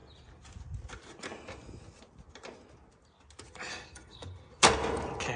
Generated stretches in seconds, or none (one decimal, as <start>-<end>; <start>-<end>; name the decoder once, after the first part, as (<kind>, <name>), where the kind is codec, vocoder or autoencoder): 3.7-4.5 (codec, SNAC)